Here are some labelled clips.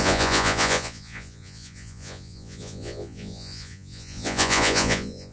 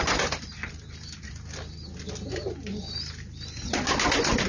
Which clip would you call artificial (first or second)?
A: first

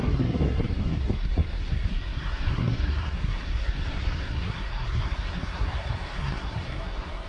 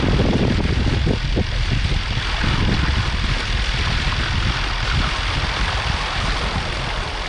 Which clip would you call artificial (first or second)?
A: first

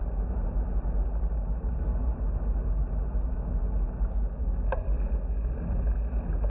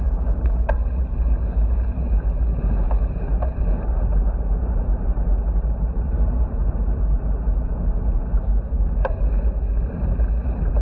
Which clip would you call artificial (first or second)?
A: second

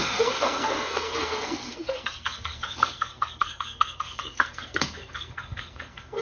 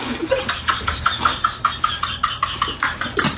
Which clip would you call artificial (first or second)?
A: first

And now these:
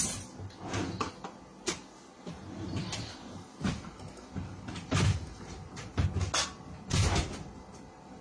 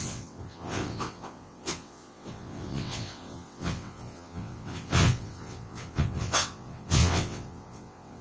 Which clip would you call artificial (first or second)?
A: second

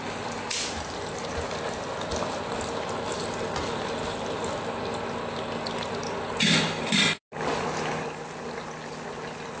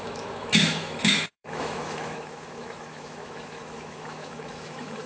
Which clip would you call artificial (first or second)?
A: second